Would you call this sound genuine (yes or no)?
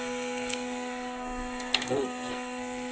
no